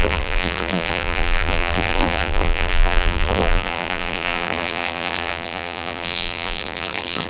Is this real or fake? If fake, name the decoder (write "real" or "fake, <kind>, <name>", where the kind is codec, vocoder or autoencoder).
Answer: fake, vocoder, BigVGAN v2